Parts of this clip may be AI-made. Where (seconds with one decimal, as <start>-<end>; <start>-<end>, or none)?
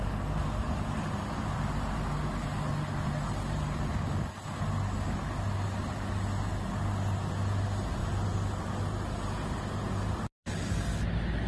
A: none